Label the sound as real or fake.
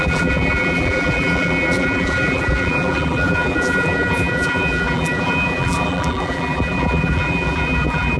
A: fake